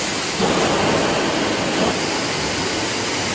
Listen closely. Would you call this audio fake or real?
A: real